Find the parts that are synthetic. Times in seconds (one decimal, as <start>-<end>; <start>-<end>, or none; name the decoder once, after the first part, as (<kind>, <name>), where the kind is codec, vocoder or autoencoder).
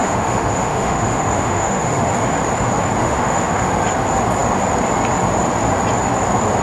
0.0-2.1 (autoencoder, DAC-VAE); 3.0-3.7